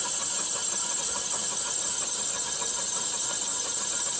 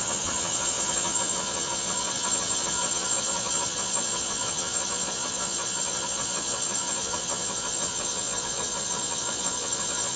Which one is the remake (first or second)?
second